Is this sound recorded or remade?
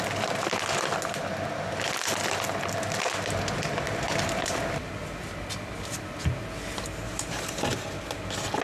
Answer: recorded